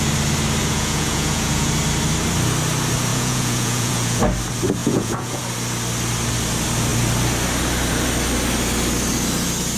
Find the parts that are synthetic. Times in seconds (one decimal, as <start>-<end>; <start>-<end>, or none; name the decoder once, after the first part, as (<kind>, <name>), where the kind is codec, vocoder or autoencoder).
0.6-1.7 (vocoder, Vocos); 3.1-4.2; 4.8-5.4